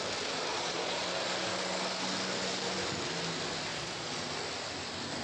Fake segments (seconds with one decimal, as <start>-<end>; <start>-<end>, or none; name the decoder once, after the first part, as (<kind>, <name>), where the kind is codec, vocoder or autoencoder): 0.5-1.0 (vocoder, Vocos); 3.7-4.3

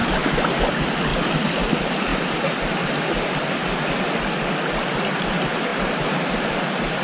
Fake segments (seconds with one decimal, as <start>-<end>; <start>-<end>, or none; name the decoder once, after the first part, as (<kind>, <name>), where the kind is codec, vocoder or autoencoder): none

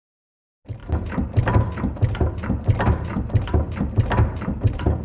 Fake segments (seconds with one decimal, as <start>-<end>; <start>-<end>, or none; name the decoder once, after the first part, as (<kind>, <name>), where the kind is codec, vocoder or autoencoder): none

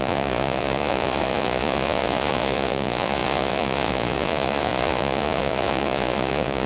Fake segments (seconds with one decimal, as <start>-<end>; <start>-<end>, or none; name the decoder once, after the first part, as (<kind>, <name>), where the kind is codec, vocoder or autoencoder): 0.0-6.7 (vocoder, Vocos)

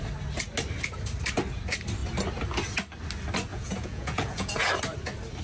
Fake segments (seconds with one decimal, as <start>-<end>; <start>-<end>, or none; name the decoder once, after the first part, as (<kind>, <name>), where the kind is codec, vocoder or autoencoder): 3.5-4.7 (vocoder, Vocos)

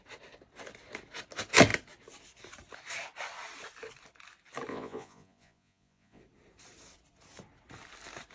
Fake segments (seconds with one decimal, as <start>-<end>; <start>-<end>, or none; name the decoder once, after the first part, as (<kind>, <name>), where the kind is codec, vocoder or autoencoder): 4.7-6.2 (vocoder, Vocos)